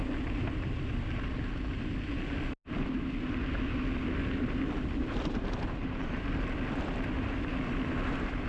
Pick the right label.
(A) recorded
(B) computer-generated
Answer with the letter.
A